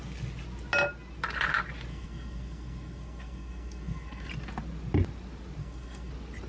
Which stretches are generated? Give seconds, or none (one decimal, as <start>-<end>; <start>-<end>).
1.9-4.3; 5.6-6.1